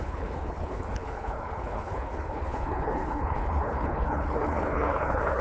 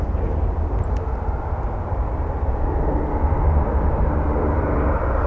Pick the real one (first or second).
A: second